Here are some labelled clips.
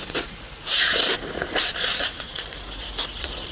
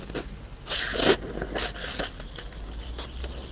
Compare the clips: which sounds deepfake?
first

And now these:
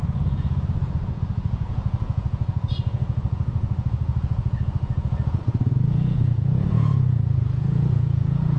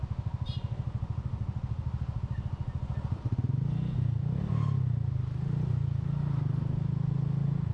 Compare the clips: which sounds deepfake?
first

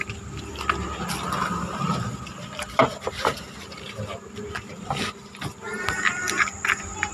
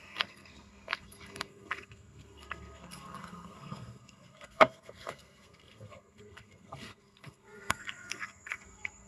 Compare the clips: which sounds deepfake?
second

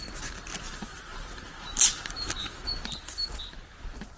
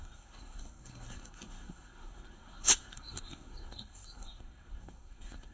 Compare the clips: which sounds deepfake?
second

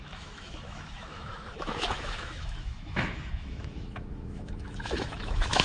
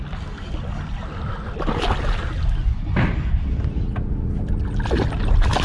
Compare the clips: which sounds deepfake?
first